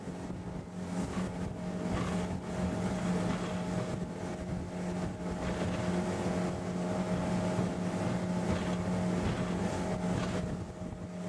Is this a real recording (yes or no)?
yes